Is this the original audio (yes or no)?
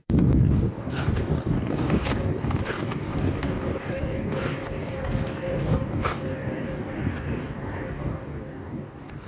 no